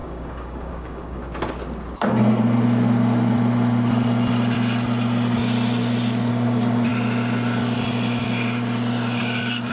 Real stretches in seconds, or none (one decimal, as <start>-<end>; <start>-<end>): 1.2-6.3; 6.9-9.2